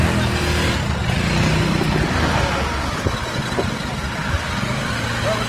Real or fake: real